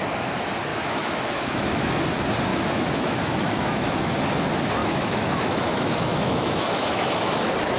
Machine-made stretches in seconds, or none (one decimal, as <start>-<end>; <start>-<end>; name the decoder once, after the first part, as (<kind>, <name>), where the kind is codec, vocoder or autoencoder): 0.7-2.0 (autoencoder, DAC-VAE); 2.5-4.1; 4.8-7.3